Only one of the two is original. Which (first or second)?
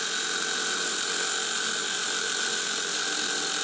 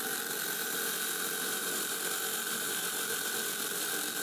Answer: first